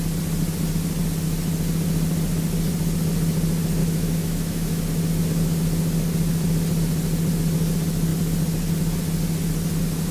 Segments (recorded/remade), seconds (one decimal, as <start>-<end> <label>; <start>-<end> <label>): 0.0-3.8 recorded; 3.8-4.8 remade; 4.8-10.1 recorded